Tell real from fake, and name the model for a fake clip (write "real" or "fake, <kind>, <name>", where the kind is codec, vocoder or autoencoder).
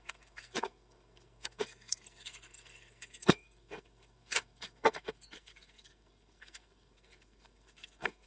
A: fake, codec, SNAC